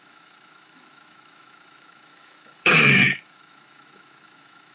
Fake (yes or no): yes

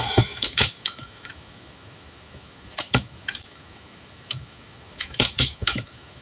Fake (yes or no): yes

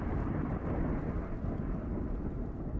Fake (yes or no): no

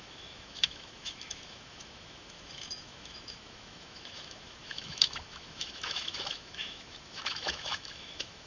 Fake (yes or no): yes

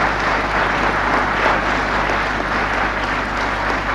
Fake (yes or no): no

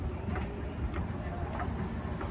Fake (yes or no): no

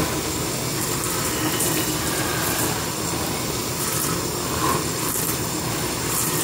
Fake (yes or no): no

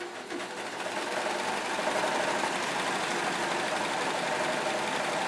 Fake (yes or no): no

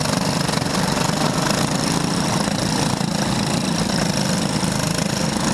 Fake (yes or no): no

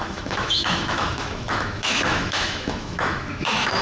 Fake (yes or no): yes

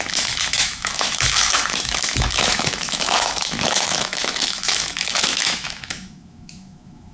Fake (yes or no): yes